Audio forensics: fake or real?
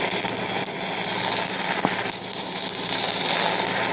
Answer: real